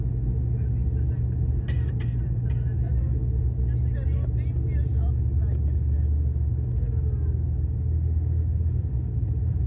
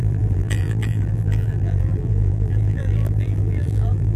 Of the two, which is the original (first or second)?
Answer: first